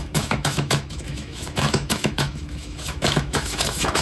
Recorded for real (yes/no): no